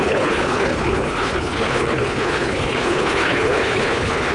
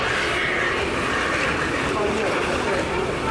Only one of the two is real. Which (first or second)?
second